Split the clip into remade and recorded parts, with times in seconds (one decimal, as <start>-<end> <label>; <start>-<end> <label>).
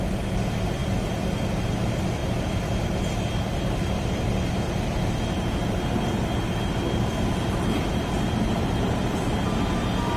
0.0-10.2 recorded